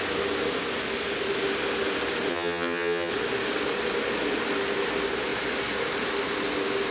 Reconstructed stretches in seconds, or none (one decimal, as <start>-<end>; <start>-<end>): 2.3-3.1

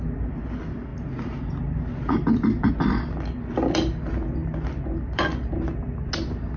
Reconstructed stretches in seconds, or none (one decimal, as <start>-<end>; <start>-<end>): none